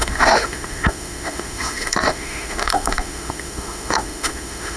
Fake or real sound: fake